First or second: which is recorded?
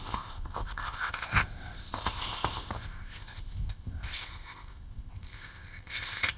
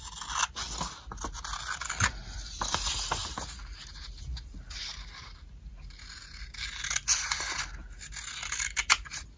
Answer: second